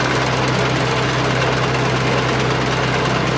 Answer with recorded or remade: recorded